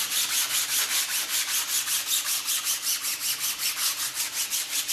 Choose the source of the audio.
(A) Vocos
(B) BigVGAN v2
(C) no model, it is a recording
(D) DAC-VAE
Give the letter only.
C